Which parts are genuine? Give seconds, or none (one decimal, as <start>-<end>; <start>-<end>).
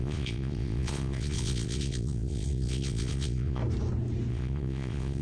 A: 3.6-4.3